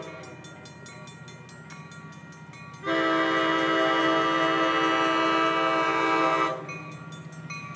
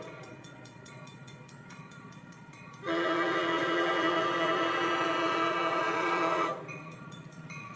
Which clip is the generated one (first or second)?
second